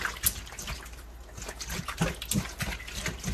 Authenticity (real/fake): real